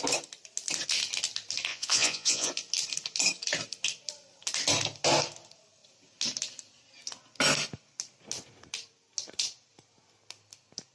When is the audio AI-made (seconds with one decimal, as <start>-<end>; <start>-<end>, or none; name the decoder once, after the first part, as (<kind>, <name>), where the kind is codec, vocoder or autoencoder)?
1.7-2.5 (vocoder, Vocos)